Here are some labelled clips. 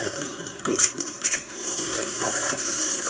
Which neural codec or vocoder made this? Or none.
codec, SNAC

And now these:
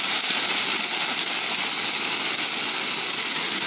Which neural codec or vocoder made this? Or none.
none